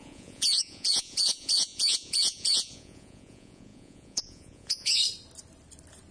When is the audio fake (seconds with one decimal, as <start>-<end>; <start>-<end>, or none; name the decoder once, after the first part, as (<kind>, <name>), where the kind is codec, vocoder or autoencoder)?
0.0-5.0 (vocoder, Vocos)